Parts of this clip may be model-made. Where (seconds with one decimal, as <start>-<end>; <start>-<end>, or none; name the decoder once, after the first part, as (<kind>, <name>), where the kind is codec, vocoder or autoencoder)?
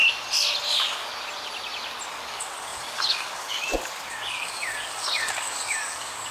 0.7-1.1 (codec, DAC); 2.1-6.3